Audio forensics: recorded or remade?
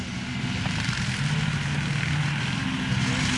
recorded